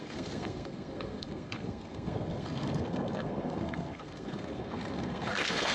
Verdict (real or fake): fake